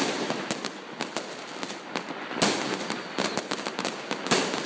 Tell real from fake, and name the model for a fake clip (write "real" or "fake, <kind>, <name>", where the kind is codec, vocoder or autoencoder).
real